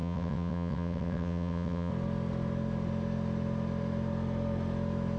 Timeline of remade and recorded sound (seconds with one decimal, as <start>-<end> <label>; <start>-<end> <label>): 0.0-1.9 remade; 1.9-5.2 recorded